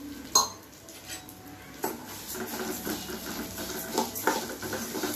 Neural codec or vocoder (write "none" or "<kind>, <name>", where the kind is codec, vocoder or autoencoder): none